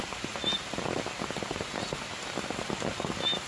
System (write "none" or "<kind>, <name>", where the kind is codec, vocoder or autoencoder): none